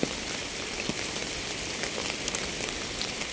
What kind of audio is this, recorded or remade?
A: recorded